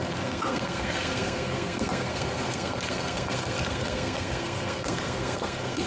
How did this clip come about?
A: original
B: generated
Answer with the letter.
B